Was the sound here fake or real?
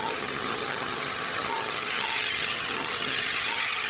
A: fake